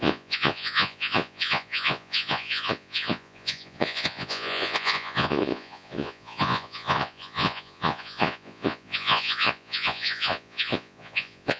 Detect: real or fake fake